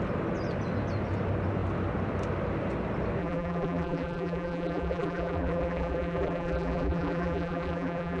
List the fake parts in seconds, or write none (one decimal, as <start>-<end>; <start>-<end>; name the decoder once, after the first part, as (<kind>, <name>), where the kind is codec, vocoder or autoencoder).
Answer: 3.2-8.2 (vocoder, BigVGAN v2)